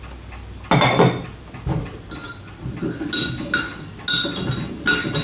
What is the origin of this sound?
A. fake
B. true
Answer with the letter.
B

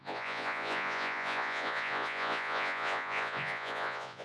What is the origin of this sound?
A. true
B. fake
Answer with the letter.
B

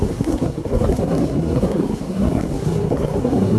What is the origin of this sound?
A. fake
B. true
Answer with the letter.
A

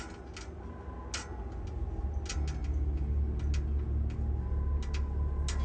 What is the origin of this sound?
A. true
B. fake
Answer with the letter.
A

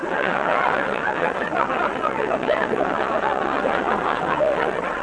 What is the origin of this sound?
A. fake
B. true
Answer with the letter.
A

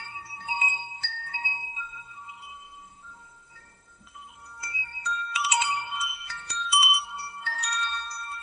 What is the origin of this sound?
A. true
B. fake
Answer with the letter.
B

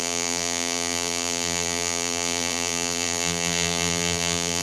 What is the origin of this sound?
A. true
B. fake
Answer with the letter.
B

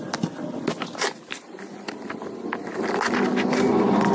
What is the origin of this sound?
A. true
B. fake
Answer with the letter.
A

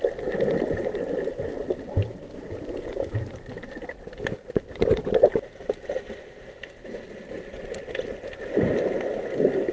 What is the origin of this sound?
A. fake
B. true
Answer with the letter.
B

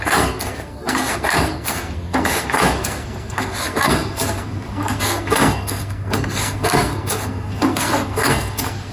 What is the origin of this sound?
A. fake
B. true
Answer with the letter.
A